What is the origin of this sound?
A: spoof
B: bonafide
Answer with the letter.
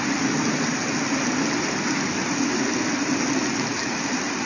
B